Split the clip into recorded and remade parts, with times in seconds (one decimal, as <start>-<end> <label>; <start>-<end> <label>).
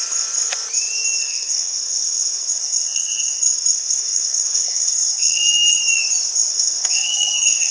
0.0-1.2 recorded; 1.2-5.8 remade; 5.8-6.5 recorded; 6.5-7.7 remade